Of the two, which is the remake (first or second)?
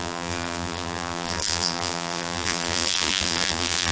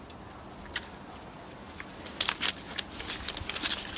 first